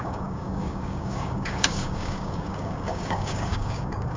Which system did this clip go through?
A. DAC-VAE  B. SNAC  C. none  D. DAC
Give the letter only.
D